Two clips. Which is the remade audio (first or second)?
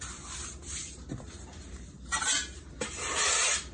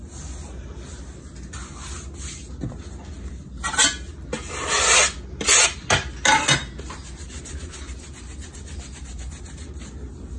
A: first